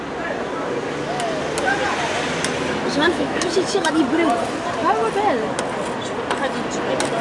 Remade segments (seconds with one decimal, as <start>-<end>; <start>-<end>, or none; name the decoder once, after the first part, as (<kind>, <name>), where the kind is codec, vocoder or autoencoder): 2.9-3.9 (autoencoder, DAC-VAE)